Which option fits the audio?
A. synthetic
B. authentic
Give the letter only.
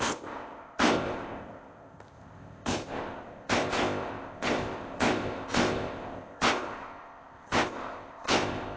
A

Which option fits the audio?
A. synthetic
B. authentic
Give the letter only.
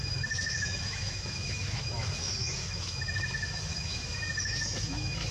A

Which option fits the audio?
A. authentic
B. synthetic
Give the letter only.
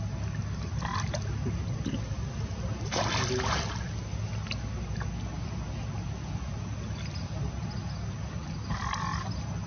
A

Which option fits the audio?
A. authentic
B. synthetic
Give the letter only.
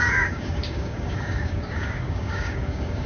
B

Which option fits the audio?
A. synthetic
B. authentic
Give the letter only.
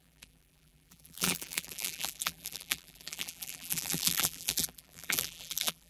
A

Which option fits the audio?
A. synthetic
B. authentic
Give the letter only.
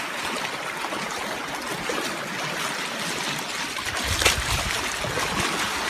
B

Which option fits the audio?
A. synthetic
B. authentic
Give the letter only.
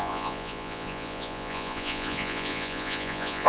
A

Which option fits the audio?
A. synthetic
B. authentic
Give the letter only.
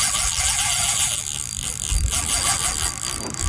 A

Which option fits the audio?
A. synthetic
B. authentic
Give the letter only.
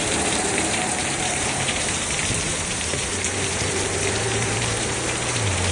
A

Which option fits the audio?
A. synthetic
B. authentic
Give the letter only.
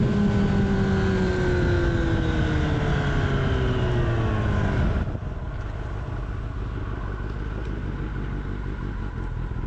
B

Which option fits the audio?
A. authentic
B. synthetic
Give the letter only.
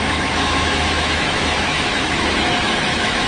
B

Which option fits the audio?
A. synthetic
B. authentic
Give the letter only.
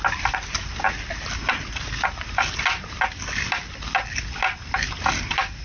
B